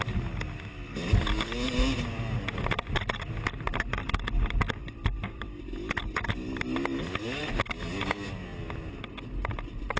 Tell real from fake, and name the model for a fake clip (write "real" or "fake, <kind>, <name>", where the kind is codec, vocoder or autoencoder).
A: real